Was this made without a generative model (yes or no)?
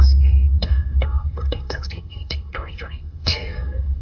no